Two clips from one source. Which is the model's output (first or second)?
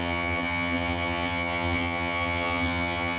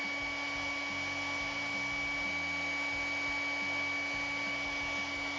first